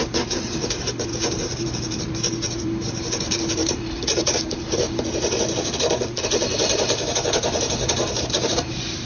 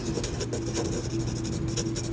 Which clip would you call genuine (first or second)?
second